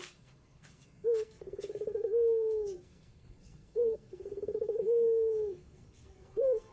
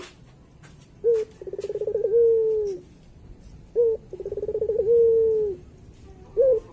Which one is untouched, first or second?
second